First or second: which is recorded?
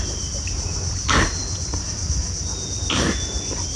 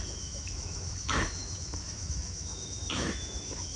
first